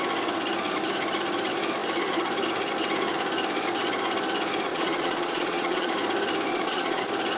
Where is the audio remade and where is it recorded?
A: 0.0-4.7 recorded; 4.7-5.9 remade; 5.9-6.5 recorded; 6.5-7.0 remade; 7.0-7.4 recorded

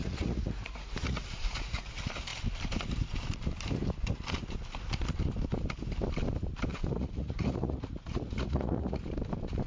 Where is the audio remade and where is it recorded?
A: 0.0-1.9 remade; 1.9-6.7 recorded; 6.7-9.0 remade; 9.0-9.7 recorded

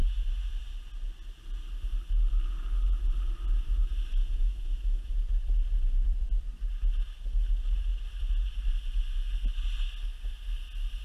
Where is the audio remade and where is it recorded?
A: 0.0-4.1 recorded; 4.1-5.1 remade; 5.1-11.0 recorded